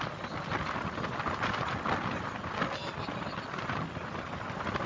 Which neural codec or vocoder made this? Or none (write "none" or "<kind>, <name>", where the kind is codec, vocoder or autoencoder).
none